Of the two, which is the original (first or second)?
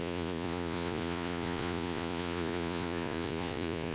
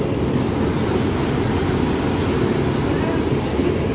second